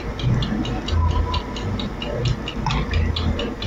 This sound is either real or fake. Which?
real